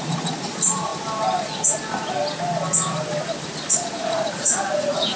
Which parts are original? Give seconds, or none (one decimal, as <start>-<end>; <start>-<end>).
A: 0.9-4.0